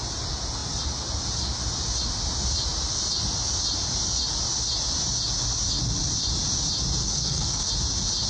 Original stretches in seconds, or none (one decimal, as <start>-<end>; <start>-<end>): 0.0-7.0; 7.7-8.3